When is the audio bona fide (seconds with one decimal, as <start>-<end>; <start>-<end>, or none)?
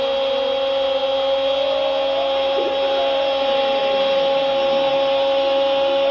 0.0-6.1